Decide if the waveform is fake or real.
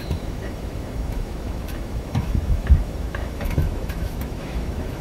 fake